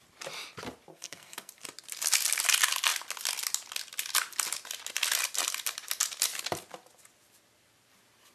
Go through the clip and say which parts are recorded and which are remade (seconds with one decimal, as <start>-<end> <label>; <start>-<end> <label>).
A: 0.0-0.9 recorded; 0.9-1.5 remade; 1.5-8.3 recorded